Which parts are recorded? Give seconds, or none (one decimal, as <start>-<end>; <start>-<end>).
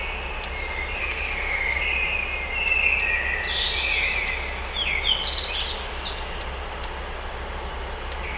0.0-1.0; 1.8-8.4